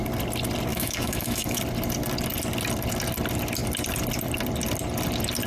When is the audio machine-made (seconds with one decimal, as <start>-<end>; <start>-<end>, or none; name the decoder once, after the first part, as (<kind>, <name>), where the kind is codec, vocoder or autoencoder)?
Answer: 0.7-1.6 (autoencoder, DAC-VAE)